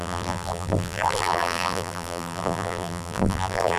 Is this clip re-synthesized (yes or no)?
yes